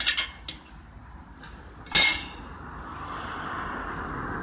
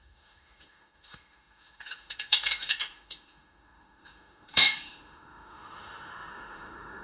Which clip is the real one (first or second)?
first